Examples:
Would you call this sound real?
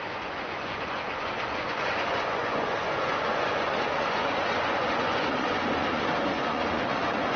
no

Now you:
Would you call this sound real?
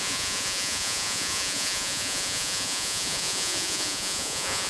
no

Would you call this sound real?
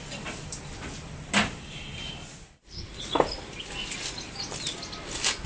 yes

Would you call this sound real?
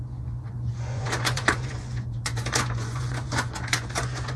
no